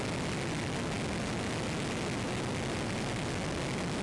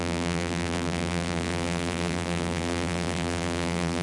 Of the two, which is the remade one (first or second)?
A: second